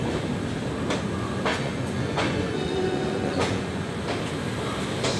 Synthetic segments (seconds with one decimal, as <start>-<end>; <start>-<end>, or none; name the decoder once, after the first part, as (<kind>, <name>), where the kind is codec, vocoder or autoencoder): 1.5-4.0 (vocoder, Vocos)